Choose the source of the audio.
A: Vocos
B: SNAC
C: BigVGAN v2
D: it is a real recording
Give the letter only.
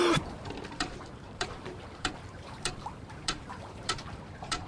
C